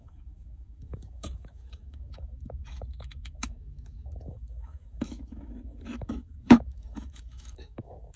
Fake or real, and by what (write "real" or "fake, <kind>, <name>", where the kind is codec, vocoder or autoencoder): fake, autoencoder, DAC-VAE